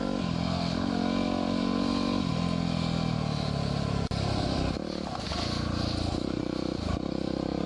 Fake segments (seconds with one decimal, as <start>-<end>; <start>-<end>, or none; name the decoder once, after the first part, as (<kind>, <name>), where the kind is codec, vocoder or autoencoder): none